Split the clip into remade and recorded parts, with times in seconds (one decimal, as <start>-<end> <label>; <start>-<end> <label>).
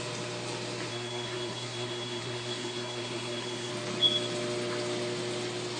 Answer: 0.0-0.9 recorded; 0.9-3.7 remade; 3.7-5.8 recorded